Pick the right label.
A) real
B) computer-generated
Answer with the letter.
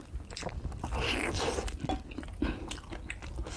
A